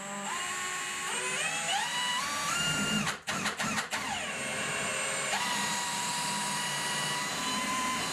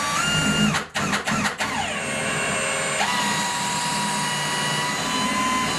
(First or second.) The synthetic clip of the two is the first